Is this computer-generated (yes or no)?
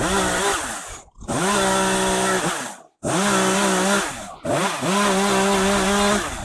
no